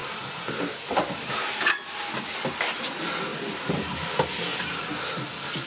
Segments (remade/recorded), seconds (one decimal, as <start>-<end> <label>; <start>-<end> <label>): 0.0-3.3 recorded; 3.3-4.1 remade; 4.1-5.7 recorded